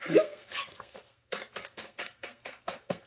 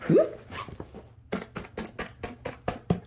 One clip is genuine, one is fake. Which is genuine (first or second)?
second